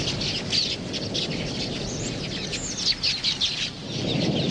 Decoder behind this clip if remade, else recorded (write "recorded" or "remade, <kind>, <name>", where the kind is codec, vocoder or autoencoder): recorded